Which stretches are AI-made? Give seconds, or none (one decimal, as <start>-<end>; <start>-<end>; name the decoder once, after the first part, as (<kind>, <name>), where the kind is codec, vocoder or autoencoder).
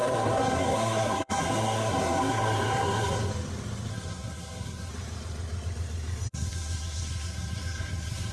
0.0-3.3 (codec, SNAC); 3.9-4.9; 6.3-8.3